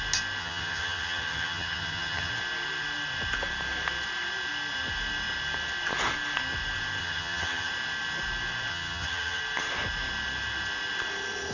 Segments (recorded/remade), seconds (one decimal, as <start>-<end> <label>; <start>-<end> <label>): 0.0-0.4 recorded; 0.4-2.3 remade; 2.3-7.0 recorded; 7.0-7.7 remade; 7.7-8.7 recorded; 8.7-9.4 remade; 9.4-11.5 recorded